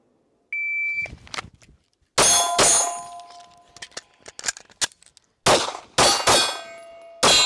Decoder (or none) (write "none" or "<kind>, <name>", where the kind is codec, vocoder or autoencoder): none